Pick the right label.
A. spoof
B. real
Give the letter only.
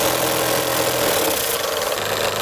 B